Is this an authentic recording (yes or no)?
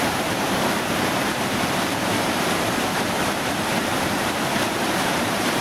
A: no